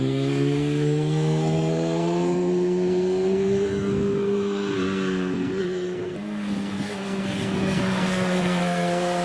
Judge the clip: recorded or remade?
remade